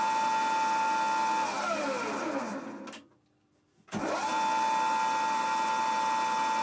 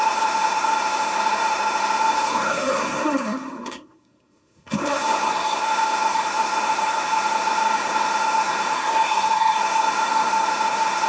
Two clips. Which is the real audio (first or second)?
first